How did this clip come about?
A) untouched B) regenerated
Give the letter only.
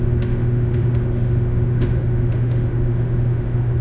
B